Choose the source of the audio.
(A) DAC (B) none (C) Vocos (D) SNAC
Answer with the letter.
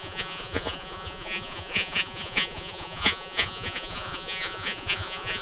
C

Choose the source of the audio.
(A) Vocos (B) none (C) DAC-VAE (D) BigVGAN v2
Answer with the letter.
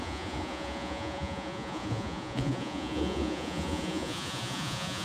A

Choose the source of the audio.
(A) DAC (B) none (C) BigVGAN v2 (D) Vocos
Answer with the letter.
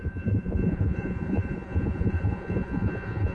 D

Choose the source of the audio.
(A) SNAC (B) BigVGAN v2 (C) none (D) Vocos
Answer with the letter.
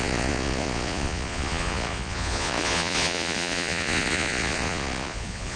D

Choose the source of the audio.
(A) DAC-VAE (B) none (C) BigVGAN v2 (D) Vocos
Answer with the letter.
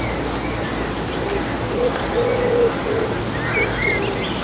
B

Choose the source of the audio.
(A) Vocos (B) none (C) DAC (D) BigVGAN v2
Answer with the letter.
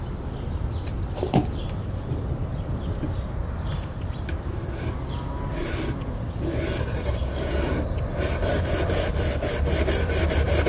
B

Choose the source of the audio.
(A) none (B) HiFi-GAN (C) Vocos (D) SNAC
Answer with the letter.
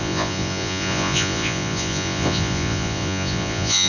C